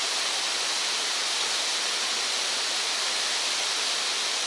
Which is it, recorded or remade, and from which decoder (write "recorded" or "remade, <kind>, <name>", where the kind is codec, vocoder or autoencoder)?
recorded